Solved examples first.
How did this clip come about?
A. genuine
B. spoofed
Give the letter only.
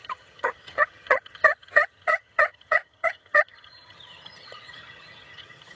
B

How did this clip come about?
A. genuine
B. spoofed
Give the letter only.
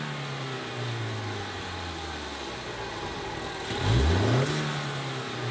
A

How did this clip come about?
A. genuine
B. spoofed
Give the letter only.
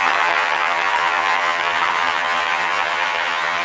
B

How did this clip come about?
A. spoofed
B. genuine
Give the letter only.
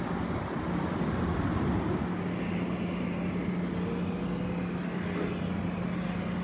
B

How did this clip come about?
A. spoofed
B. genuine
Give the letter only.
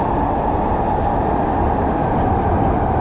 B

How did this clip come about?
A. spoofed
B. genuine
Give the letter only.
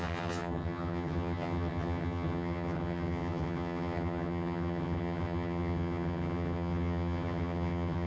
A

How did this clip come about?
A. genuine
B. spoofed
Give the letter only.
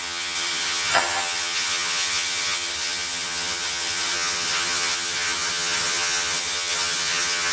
B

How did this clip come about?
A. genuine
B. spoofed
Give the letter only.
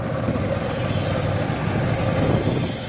A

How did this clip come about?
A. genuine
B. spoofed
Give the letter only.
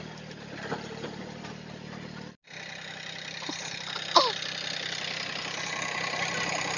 A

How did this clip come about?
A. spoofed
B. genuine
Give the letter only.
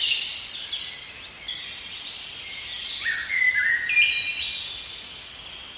B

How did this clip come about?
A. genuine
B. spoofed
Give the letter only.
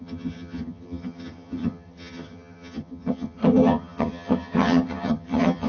B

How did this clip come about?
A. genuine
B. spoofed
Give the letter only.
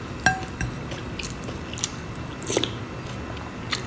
A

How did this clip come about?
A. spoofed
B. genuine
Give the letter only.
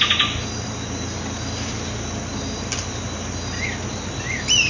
B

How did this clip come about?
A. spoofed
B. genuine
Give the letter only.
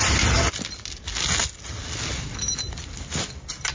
B